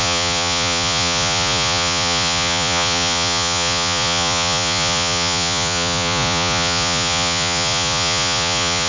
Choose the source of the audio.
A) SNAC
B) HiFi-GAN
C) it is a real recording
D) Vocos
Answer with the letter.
D